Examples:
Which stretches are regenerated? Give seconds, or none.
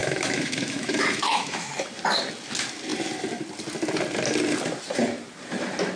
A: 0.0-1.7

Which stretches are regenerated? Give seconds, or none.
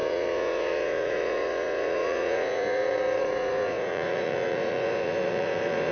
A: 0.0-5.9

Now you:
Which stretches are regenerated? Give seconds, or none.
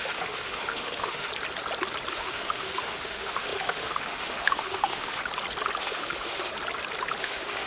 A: 0.0-1.3; 2.1-5.2; 5.8-6.5; 7.2-7.7